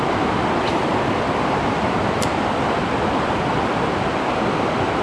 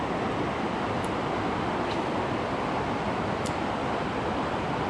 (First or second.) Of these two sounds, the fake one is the first